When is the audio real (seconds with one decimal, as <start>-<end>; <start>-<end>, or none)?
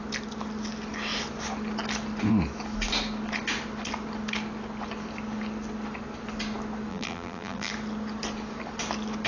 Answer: 0.0-6.9; 7.7-9.3